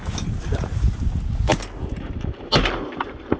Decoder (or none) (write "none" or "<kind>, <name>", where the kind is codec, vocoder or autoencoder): none